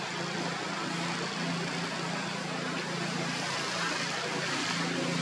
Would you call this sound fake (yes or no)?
no